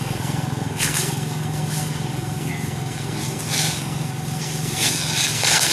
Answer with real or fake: fake